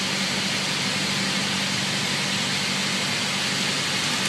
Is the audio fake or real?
real